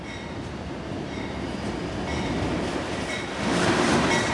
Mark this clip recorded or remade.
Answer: recorded